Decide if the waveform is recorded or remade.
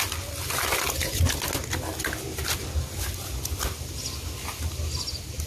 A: recorded